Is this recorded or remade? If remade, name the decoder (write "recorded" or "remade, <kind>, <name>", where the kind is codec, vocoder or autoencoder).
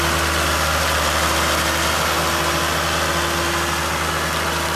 recorded